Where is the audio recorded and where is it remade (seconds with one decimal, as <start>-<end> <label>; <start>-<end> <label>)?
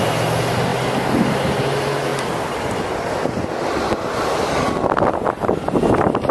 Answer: 0.0-6.3 recorded